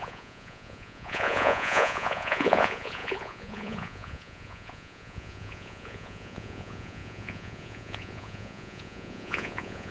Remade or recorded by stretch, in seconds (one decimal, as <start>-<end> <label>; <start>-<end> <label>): 0.0-9.9 remade